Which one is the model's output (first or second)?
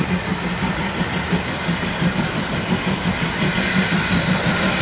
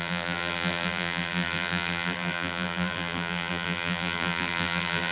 second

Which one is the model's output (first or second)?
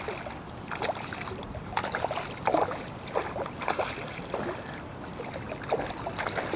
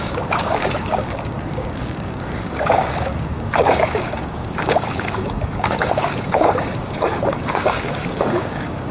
second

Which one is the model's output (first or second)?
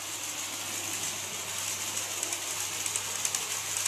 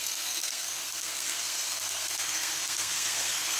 second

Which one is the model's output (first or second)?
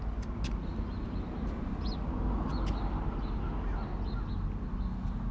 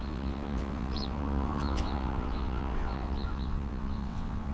second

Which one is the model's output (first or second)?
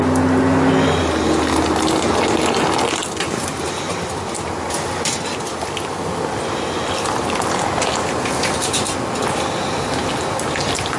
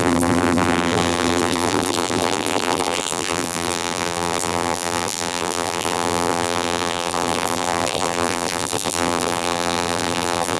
second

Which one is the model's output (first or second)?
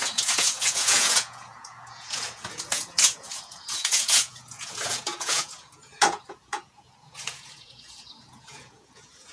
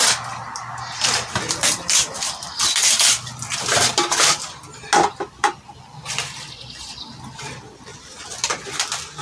first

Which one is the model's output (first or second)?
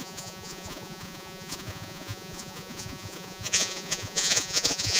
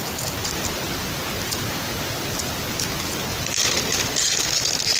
first